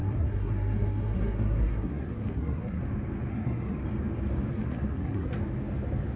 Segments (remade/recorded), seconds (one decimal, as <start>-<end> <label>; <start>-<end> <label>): 0.0-2.8 remade; 2.8-3.3 recorded; 3.3-3.8 remade; 3.8-4.5 recorded; 4.5-5.4 remade; 5.4-6.2 recorded